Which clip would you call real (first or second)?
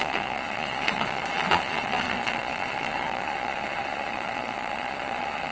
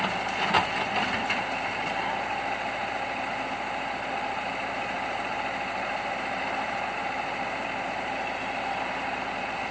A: second